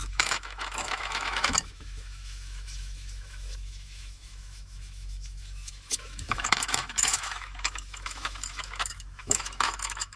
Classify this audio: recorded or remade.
remade